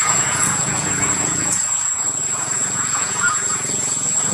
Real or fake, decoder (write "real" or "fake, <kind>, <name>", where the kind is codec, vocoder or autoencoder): fake, vocoder, Vocos